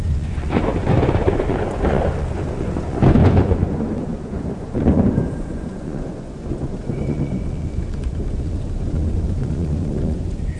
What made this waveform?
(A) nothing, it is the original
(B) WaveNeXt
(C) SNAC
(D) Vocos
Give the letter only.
D